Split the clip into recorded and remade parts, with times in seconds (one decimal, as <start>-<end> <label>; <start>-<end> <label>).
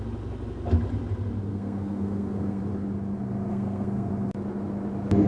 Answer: 0.0-1.5 recorded; 1.5-2.6 remade; 2.6-3.5 recorded; 3.5-4.1 remade; 4.1-5.3 recorded